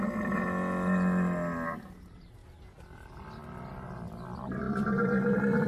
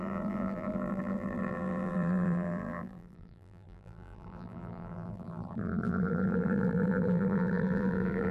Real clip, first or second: first